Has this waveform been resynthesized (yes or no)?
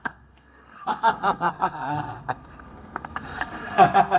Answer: yes